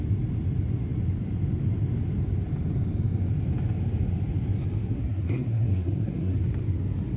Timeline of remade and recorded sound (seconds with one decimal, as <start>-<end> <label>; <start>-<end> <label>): 0.0-4.8 recorded; 4.8-6.4 remade; 6.4-7.2 recorded